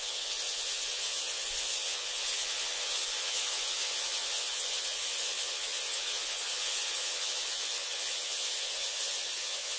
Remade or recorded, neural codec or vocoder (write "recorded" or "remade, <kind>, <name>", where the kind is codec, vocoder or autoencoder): remade, vocoder, Vocos